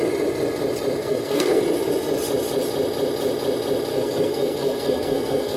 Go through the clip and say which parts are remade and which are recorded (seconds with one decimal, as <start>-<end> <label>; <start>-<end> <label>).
0.0-1.0 recorded; 1.0-1.6 remade; 1.6-3.9 recorded; 3.9-5.6 remade